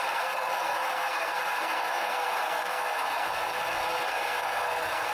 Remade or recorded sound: remade